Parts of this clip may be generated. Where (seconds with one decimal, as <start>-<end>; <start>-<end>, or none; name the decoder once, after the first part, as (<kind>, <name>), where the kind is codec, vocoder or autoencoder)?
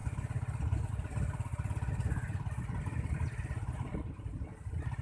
0.9-1.5 (vocoder, BigVGAN v2); 3.1-5.0